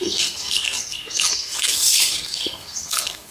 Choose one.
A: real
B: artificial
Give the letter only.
B